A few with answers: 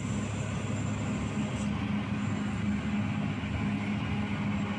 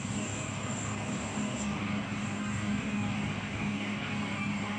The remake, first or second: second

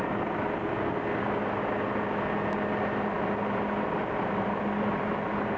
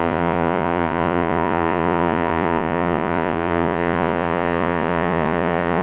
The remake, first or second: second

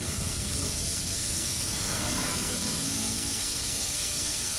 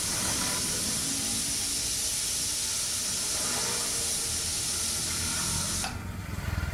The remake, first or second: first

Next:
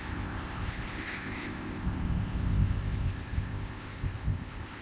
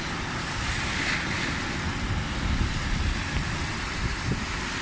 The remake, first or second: first